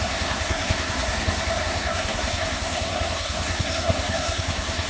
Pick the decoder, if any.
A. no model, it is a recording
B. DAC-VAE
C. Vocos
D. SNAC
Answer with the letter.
D